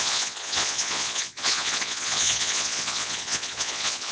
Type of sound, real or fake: fake